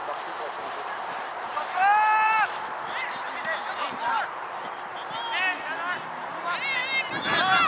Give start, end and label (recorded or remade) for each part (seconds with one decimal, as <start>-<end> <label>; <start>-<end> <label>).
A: 0.0-4.5 remade; 4.5-7.7 recorded